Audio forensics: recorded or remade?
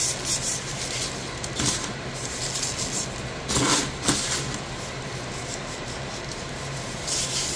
recorded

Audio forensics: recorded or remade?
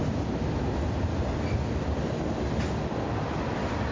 recorded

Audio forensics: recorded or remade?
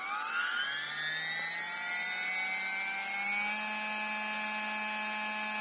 recorded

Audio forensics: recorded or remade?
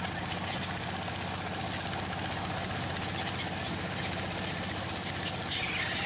recorded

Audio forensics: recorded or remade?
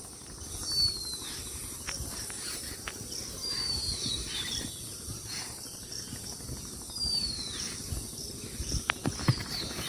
remade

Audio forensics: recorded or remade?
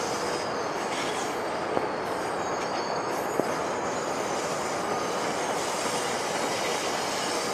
recorded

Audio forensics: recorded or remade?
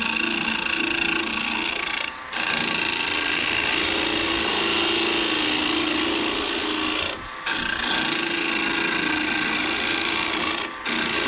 recorded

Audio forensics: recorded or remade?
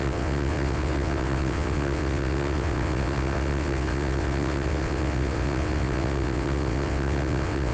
remade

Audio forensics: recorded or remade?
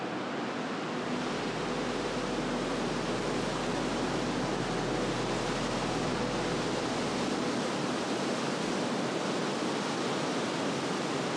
recorded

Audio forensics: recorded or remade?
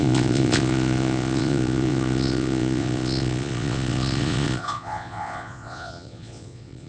remade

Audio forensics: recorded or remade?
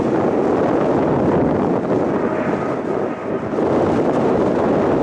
recorded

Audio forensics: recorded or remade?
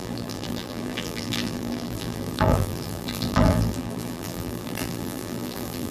remade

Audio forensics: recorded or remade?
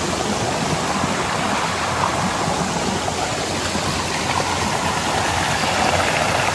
recorded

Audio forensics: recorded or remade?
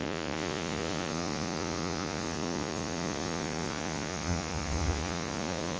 remade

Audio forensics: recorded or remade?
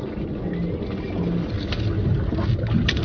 recorded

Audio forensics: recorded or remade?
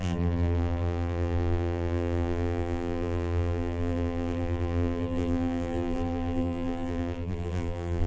remade